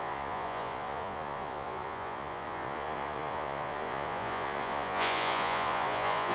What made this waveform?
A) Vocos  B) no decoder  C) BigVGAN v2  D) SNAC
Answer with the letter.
A